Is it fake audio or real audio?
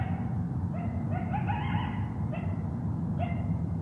real